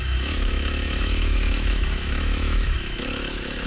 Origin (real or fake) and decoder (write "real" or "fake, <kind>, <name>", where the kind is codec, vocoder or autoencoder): fake, autoencoder, DAC-VAE